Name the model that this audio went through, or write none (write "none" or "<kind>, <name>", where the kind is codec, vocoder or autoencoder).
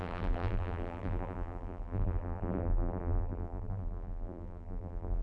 vocoder, BigVGAN v2